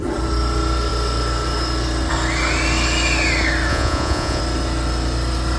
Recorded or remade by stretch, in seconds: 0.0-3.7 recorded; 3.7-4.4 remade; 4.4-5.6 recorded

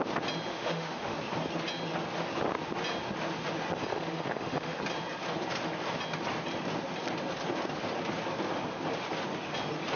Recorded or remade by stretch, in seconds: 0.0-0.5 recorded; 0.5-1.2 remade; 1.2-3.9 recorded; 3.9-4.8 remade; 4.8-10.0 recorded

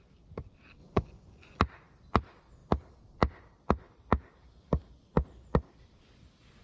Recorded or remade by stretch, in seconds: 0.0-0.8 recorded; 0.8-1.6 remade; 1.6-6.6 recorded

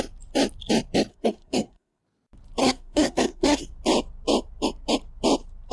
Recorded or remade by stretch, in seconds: 0.0-1.1 recorded; 1.1-2.0 remade; 2.0-2.6 recorded; 2.6-3.6 remade; 3.6-5.7 recorded